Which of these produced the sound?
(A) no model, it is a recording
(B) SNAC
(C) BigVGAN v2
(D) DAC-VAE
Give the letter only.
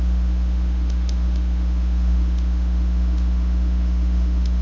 D